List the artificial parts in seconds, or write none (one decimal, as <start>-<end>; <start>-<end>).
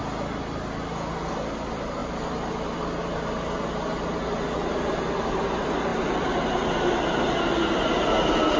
none